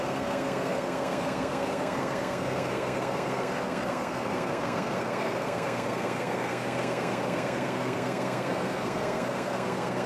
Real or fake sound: fake